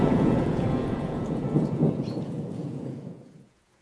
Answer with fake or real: fake